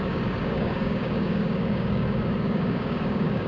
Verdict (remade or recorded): remade